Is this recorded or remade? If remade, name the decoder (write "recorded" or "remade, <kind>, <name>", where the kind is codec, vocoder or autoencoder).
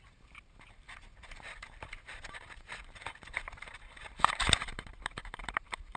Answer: remade, vocoder, BigVGAN v2